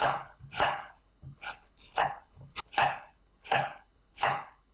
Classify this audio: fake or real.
fake